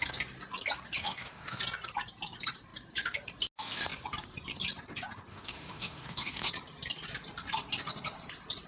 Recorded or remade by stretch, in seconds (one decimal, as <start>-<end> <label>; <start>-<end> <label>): 0.0-1.0 recorded; 1.0-1.6 remade; 1.6-5.3 recorded; 5.3-6.5 remade; 6.5-8.7 recorded